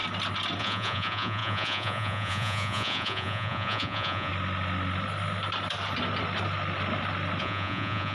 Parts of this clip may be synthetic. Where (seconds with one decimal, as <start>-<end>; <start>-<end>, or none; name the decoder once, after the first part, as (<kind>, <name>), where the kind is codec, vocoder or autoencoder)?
0.6-4.3 (vocoder, Vocos); 7.4-8.1